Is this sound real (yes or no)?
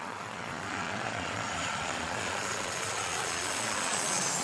no